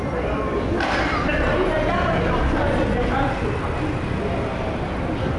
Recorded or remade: recorded